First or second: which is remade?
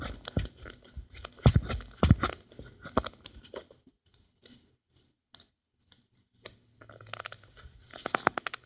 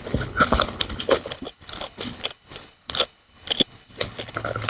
second